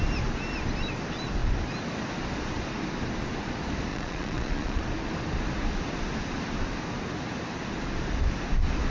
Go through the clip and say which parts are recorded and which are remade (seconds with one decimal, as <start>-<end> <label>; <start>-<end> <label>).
0.0-3.9 recorded; 3.9-4.8 remade; 4.8-8.9 recorded